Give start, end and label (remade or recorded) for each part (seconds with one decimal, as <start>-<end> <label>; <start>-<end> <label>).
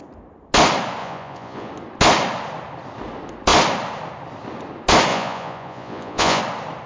0.0-1.0 recorded; 1.0-1.7 remade; 1.7-5.1 recorded; 5.1-6.4 remade; 6.4-6.9 recorded